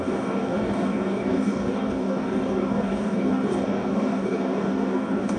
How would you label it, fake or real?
fake